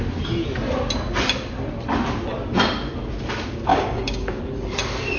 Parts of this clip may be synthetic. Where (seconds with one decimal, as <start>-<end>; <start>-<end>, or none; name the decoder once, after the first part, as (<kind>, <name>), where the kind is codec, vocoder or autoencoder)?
3.7-4.4 (codec, DAC)